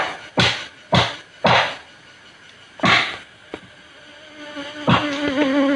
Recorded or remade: recorded